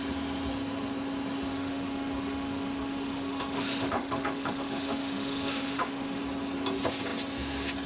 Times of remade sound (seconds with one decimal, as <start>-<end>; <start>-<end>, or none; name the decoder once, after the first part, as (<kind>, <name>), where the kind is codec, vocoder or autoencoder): 1.5-6.2 (autoencoder, DAC-VAE)